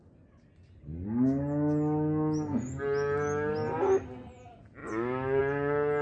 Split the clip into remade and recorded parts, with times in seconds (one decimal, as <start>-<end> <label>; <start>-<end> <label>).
0.0-6.0 recorded